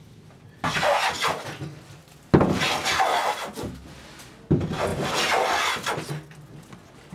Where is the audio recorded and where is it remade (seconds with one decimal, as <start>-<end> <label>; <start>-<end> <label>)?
0.0-7.1 recorded